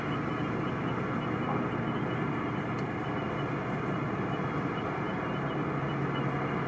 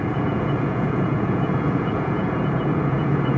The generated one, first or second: second